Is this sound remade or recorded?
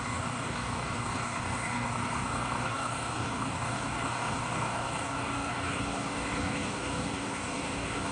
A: remade